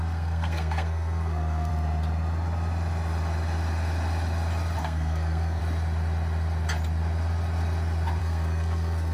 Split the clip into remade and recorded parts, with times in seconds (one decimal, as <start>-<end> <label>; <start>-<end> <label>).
0.0-1.7 remade; 1.7-4.8 recorded; 4.8-5.6 remade; 5.6-8.2 recorded; 8.2-9.1 remade